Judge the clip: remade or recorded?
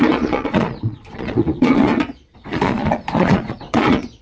remade